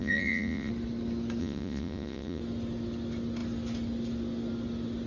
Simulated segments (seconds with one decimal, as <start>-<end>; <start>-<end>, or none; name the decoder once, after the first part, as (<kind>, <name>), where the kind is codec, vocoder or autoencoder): 0.0-0.7 (vocoder, Vocos); 1.4-2.4